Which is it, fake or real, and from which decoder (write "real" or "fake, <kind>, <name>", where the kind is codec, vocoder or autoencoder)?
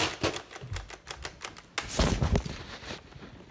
real